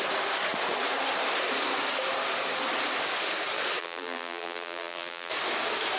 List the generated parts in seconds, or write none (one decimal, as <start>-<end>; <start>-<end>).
3.8-5.3

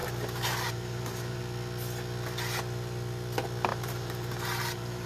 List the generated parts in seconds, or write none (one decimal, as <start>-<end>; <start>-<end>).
0.0-1.4; 3.7-5.1